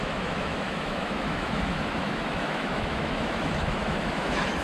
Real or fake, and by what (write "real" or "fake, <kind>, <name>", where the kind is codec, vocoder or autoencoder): fake, autoencoder, DAC-VAE